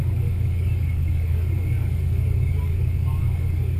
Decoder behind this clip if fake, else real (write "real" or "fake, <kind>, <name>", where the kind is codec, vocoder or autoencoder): fake, codec, DAC